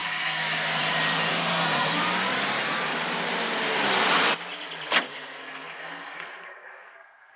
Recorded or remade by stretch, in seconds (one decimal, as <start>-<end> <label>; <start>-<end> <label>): 0.0-0.8 remade; 0.8-1.3 recorded; 1.3-1.9 remade; 1.9-5.1 recorded; 5.1-7.4 remade